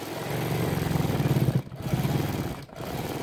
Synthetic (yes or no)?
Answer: no